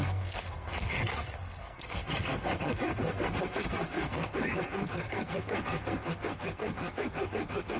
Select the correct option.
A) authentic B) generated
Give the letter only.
B